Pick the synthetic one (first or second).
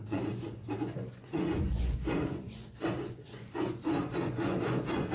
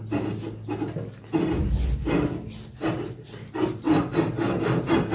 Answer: first